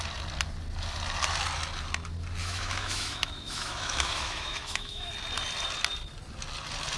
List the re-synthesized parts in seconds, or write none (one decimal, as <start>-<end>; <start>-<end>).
2.4-5.1